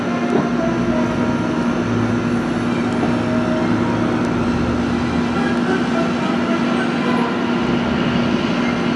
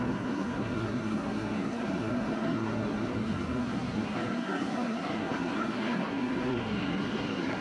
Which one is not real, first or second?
second